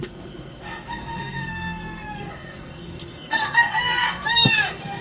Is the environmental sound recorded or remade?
remade